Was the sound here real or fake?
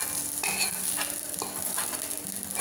real